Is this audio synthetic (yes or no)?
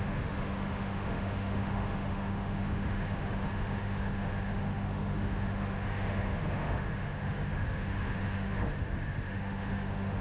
yes